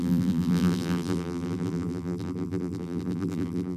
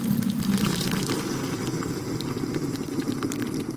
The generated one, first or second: first